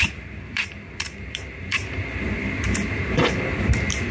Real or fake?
fake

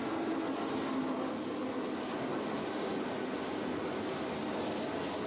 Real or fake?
real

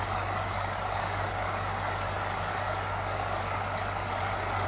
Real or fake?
fake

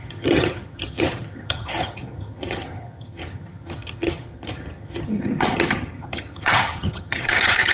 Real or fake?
fake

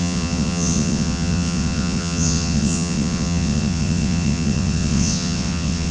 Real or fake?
fake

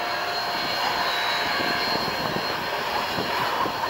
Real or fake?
real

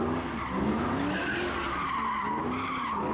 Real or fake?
real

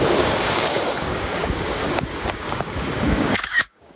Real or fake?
fake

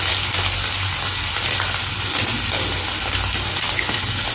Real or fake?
real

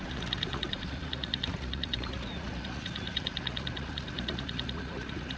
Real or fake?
fake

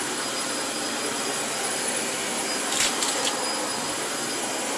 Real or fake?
fake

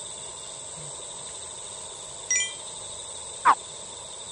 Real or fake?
real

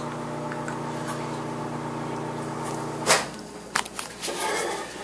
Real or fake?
real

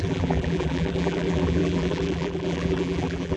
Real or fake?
fake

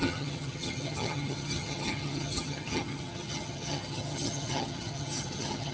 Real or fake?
fake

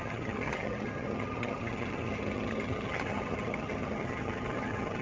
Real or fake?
fake